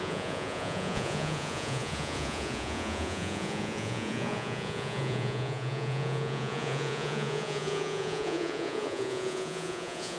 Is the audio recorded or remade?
remade